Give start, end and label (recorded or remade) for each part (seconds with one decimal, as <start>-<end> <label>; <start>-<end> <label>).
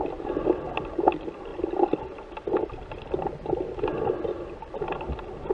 0.0-5.5 recorded